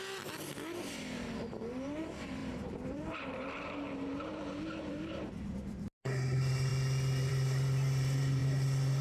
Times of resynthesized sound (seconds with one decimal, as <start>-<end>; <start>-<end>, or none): 0.9-6.7; 7.3-9.0